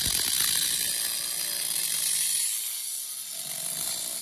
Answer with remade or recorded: recorded